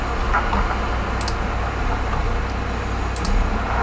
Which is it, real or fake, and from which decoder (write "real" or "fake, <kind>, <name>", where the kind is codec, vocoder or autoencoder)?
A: real